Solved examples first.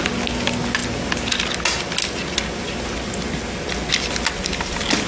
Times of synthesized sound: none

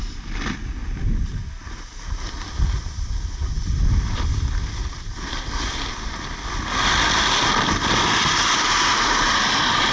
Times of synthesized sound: none

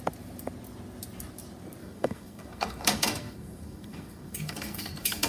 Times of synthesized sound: 1.8-5.3 (codec, SNAC)

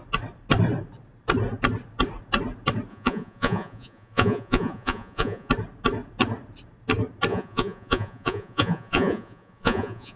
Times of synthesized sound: 2.9-5.5 (vocoder, Vocos); 7.3-10.2

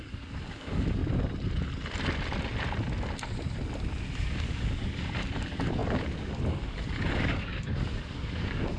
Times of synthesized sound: 0.0-1.0 (codec, DAC); 4.2-8.8